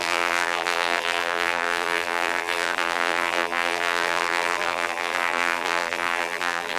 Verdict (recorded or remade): remade